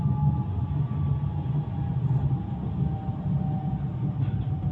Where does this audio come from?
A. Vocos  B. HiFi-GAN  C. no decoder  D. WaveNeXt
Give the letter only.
C